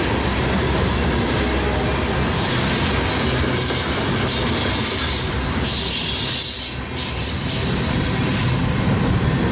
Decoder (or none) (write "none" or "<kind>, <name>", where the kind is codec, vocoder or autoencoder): none